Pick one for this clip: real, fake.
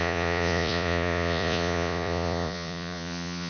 fake